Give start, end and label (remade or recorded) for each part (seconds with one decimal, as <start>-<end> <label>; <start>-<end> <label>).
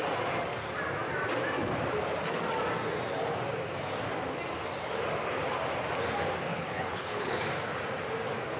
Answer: 0.0-6.5 recorded; 6.5-7.4 remade; 7.4-8.6 recorded